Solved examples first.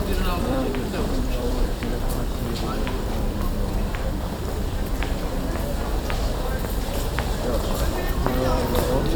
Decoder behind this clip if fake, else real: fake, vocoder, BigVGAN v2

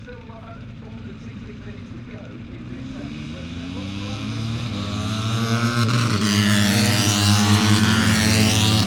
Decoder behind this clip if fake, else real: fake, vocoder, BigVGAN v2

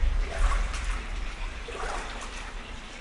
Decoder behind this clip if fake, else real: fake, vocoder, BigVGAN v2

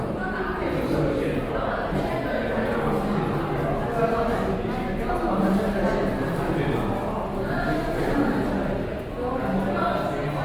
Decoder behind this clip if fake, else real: real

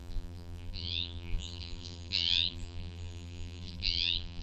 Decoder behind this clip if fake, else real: fake, vocoder, BigVGAN v2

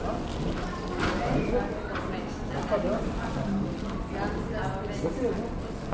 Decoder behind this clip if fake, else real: real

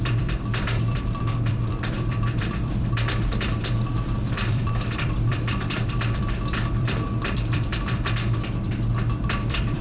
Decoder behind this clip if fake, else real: fake, vocoder, BigVGAN v2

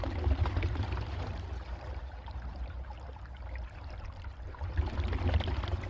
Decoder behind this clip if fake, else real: real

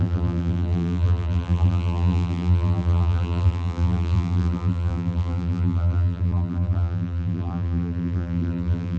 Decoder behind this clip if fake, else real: fake, vocoder, BigVGAN v2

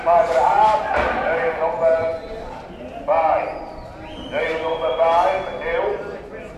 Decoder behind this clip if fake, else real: real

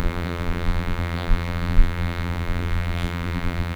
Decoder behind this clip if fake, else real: fake, vocoder, BigVGAN v2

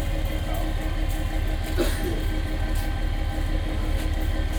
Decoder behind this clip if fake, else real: real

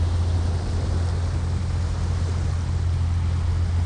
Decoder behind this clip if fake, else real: real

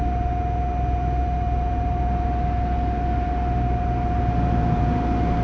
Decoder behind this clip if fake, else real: real